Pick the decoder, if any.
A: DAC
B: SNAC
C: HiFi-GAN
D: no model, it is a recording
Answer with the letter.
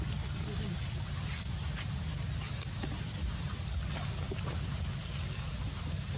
D